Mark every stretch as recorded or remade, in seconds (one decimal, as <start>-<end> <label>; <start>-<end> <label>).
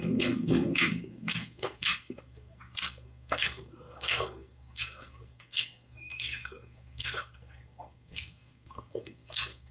0.0-9.7 remade